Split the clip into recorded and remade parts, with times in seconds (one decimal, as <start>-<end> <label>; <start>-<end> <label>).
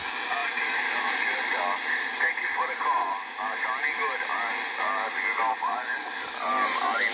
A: 0.0-7.1 recorded